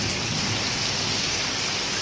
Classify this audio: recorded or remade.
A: recorded